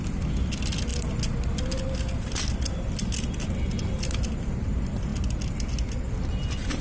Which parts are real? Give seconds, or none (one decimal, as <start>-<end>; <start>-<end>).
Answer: 0.0-6.8